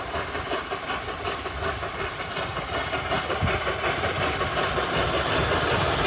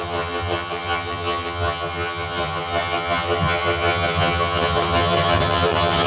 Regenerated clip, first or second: second